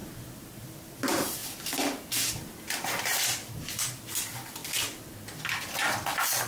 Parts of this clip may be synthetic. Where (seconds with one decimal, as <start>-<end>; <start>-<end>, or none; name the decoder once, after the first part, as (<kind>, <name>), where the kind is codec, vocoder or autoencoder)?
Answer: 0.6-1.4 (vocoder, BigVGAN v2); 2.3-4.6; 5.4-6.5